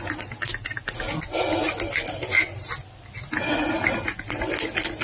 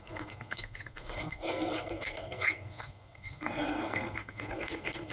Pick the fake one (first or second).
second